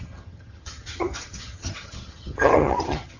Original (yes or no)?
no